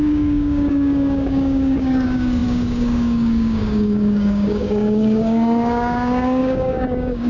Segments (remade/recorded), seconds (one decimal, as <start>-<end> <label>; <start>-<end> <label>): 0.0-7.3 remade